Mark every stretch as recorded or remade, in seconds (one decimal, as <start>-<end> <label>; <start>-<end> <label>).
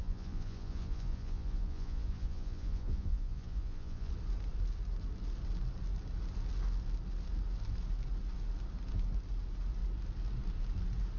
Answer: 0.0-4.1 remade; 4.1-11.2 recorded